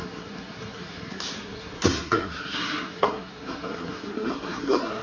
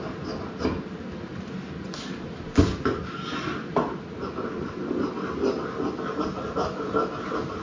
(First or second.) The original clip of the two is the second